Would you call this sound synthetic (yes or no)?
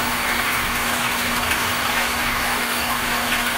yes